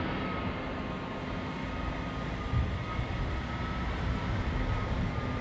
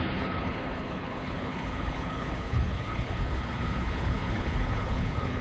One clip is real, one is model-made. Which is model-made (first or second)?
second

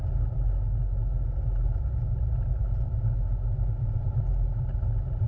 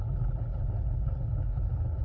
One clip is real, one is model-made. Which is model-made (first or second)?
second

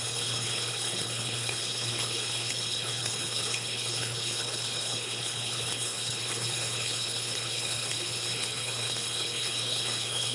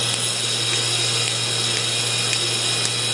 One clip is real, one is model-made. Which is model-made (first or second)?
first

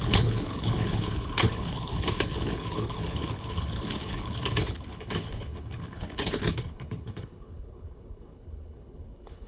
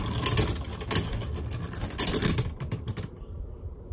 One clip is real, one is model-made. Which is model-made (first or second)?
first